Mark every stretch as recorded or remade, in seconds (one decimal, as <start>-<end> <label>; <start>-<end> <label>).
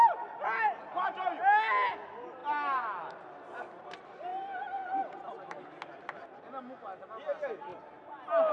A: 0.0-8.5 recorded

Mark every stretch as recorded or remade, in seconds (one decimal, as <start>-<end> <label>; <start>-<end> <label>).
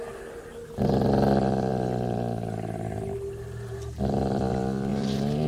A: 0.0-4.9 recorded; 4.9-5.5 remade